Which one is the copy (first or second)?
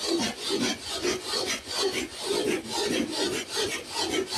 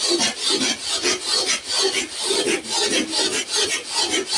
first